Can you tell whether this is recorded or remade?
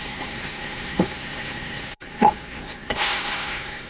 remade